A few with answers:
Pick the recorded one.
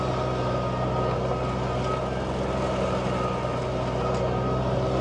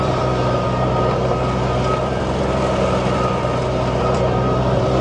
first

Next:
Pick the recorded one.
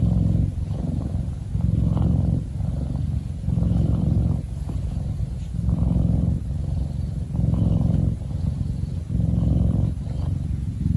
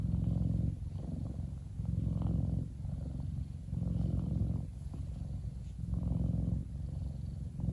second